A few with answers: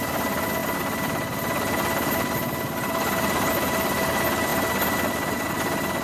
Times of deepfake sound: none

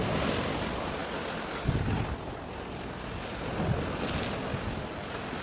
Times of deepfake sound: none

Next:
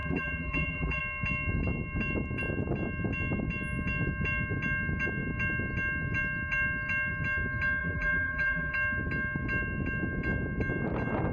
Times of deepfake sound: 0.0-1.0; 7.8-8.7

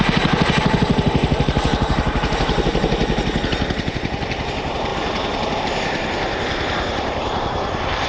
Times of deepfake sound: 0.0-3.0; 3.9-4.9; 5.6-8.1